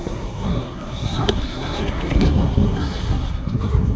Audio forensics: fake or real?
fake